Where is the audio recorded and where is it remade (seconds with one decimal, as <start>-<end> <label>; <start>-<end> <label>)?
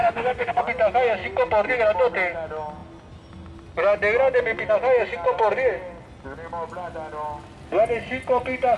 0.0-0.6 remade; 0.6-8.8 recorded